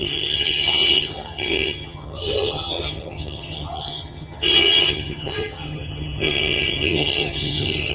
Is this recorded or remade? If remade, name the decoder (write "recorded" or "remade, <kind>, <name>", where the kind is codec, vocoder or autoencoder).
remade, vocoder, HiFi-GAN